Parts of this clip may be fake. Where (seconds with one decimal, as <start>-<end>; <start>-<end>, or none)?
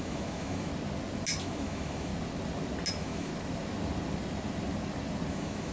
0.0-0.7; 1.4-2.1; 2.9-3.3; 5.3-5.7